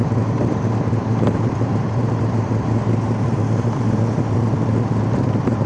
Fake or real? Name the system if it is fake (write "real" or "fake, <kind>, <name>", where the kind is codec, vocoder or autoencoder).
fake, vocoder, BigVGAN v2